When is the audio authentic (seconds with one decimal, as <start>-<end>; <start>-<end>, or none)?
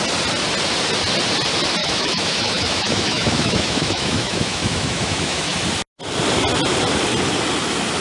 0.0-1.8; 5.6-8.0